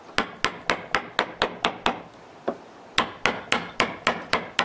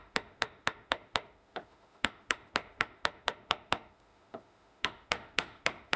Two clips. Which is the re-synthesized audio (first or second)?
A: second